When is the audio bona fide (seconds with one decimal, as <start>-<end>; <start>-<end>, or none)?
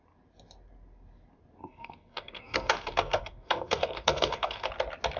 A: 0.0-1.6; 4.7-5.2